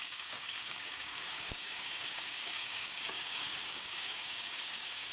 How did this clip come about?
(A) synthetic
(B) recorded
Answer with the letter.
A